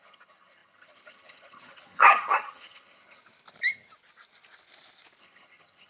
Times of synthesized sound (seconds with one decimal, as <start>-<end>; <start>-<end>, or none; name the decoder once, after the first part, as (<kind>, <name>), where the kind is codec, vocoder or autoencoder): 0.0-3.2 (vocoder, HiFi-GAN); 5.2-5.9